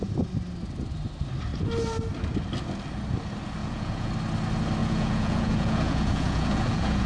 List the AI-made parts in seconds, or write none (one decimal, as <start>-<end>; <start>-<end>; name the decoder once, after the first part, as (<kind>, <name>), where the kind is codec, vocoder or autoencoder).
3.6-4.1 (vocoder, Vocos); 4.8-7.1

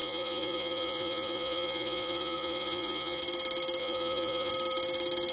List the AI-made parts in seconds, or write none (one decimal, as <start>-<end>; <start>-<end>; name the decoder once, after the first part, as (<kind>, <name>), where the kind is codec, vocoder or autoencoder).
0.0-3.2 (vocoder, Vocos); 3.8-4.5

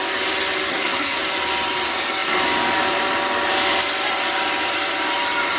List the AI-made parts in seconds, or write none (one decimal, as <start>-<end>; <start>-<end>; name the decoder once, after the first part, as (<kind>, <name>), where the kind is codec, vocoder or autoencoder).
0.7-1.2 (codec, SNAC)

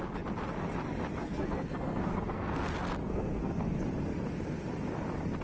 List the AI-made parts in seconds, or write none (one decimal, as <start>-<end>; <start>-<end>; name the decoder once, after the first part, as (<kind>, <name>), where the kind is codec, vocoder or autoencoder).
1.2-2.6 (codec, SNAC); 3.0-3.6

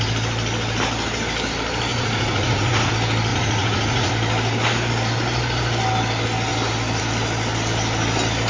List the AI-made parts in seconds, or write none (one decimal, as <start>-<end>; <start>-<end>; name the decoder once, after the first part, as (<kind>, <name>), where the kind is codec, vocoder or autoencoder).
1.9-2.9 (vocoder, Vocos); 3.3-4.1